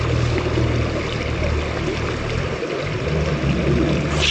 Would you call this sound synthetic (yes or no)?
no